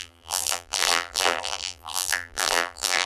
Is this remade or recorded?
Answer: remade